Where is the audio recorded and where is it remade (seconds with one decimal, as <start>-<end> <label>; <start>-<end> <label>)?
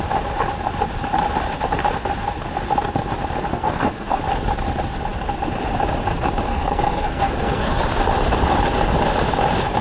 0.0-3.5 recorded; 3.5-4.2 remade; 4.2-6.5 recorded; 6.5-7.8 remade; 7.8-9.8 recorded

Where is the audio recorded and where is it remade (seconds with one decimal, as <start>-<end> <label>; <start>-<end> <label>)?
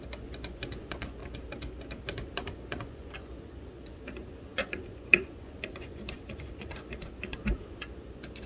0.0-1.2 remade; 1.2-2.0 recorded; 2.0-8.5 remade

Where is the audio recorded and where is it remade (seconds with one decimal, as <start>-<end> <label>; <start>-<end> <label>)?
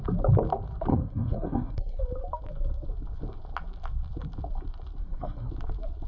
0.0-0.9 recorded; 0.9-2.0 remade; 2.0-5.0 recorded; 5.0-5.5 remade; 5.5-6.1 recorded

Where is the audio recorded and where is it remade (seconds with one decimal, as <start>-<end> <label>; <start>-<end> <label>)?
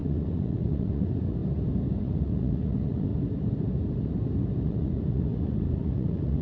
0.0-1.4 remade; 1.4-2.0 recorded; 2.0-3.1 remade; 3.1-4.6 recorded; 4.6-6.4 remade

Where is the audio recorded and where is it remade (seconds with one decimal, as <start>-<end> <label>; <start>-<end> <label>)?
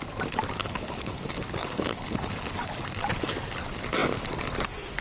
0.0-0.6 recorded; 0.6-1.2 remade; 1.2-1.6 recorded; 1.6-2.3 remade; 2.3-5.0 recorded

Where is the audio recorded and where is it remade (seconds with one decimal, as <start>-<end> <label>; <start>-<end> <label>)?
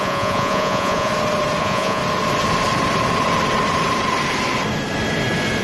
0.0-1.1 remade; 1.1-1.6 recorded; 1.6-2.0 remade; 2.0-5.6 recorded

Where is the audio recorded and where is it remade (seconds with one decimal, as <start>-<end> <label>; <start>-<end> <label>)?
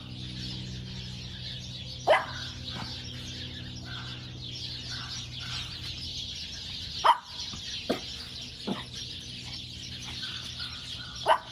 0.0-11.5 recorded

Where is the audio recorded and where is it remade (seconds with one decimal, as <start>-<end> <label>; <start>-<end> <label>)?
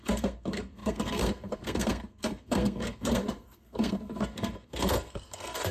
0.0-5.7 remade